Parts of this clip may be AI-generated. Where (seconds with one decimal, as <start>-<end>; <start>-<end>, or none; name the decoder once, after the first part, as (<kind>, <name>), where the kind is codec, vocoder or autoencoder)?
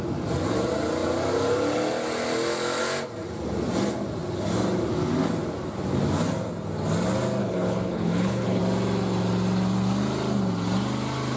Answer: 7.4-8.6 (codec, HILCodec)